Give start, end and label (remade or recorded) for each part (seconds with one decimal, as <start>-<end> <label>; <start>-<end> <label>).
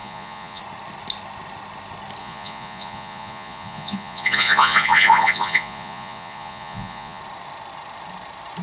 0.0-0.6 remade; 0.6-2.2 recorded; 2.2-7.2 remade; 7.2-8.6 recorded